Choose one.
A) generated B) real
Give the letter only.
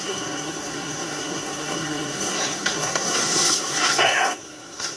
A